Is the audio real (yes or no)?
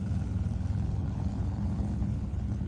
no